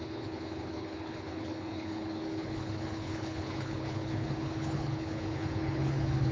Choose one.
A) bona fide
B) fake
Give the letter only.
B